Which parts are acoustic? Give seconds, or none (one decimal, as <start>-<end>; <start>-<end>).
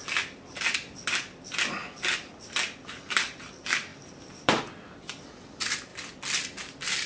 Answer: 0.0-1.8; 2.3-3.9; 4.6-5.9; 6.6-7.1